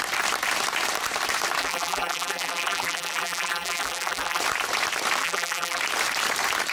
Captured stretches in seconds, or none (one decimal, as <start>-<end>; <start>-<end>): 0.0-1.6; 4.4-5.2; 5.8-6.7